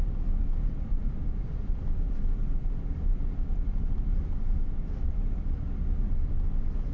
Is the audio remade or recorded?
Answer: recorded